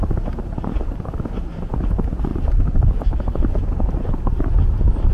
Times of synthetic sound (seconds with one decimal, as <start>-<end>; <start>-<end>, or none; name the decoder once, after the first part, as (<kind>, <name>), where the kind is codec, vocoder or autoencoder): 0.0-5.1 (vocoder, BigVGAN v2)

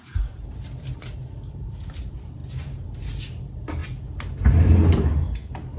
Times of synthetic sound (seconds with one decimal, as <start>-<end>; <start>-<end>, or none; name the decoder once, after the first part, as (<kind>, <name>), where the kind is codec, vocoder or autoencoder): 0.0-3.8 (vocoder, BigVGAN v2); 4.6-5.1

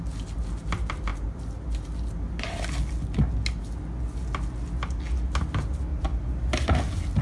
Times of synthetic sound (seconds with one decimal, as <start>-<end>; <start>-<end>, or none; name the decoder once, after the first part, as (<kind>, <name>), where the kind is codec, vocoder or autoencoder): 5.9-6.5 (vocoder, BigVGAN v2)